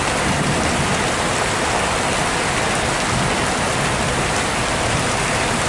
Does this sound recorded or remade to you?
recorded